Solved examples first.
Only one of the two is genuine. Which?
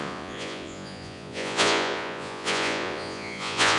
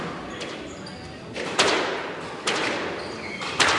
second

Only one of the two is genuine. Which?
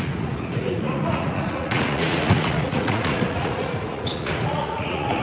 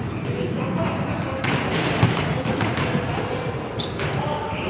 second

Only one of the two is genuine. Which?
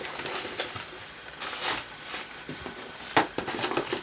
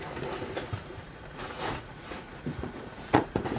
first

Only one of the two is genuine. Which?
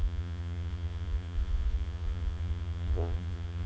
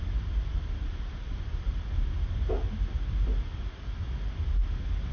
second